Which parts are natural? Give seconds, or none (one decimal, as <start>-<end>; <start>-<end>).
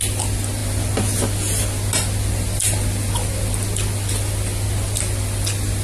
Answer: 0.0-5.8